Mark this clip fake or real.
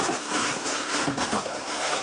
fake